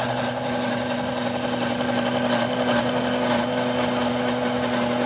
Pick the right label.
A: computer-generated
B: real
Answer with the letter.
B